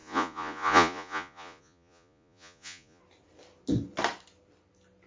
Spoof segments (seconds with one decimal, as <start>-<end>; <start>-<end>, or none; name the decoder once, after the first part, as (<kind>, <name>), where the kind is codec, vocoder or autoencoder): 0.0-3.0 (vocoder, Vocos)